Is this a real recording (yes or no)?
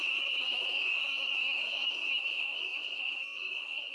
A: no